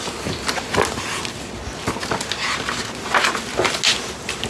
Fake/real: real